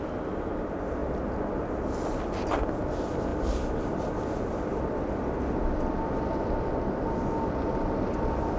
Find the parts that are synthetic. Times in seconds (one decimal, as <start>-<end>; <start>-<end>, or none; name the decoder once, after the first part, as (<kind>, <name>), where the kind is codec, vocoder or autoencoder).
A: none